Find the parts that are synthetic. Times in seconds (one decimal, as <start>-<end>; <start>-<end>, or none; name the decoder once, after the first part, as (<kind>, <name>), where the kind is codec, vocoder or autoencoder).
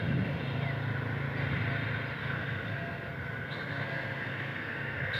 2.2-5.2 (codec, SNAC)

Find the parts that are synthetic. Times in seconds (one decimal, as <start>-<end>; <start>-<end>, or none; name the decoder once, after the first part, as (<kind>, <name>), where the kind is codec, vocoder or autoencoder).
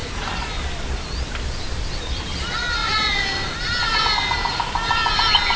none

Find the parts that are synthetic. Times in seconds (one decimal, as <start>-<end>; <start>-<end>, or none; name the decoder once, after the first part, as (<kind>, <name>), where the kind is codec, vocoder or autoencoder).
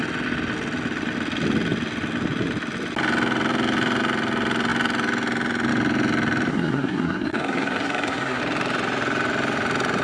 6.5-8.4 (codec, SNAC)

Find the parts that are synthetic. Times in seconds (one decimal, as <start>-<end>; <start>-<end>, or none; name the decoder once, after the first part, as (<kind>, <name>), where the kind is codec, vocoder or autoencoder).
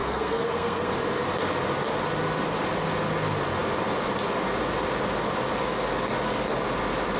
0.0-0.9 (codec, SNAC)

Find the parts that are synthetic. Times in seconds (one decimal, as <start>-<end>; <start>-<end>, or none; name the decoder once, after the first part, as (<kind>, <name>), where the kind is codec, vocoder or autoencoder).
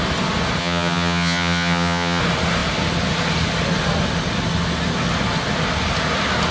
0.6-2.2 (vocoder, HiFi-GAN)